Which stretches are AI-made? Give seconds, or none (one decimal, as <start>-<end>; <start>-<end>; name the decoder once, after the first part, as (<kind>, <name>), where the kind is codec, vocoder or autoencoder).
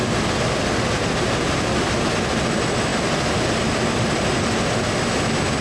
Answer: none